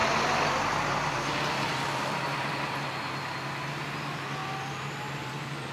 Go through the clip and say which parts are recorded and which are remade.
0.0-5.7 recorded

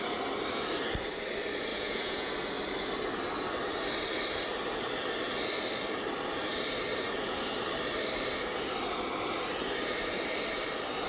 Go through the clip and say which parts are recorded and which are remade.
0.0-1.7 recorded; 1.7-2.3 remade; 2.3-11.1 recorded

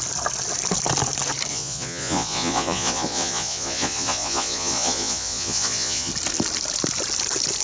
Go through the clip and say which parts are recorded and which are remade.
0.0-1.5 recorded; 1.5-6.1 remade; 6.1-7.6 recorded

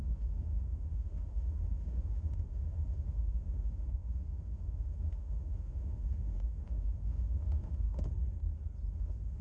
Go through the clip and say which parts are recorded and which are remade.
0.0-8.1 remade; 8.1-8.9 recorded; 8.9-9.4 remade

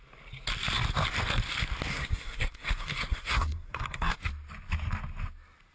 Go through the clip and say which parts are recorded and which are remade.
0.0-1.9 recorded; 1.9-4.2 remade; 4.2-5.7 recorded

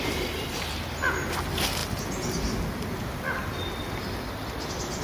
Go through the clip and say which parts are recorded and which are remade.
0.0-5.0 recorded

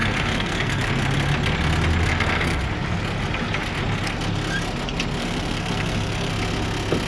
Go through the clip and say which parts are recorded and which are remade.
0.0-1.0 remade; 1.0-2.0 recorded; 2.0-2.6 remade; 2.6-5.2 recorded; 5.2-6.3 remade; 6.3-7.1 recorded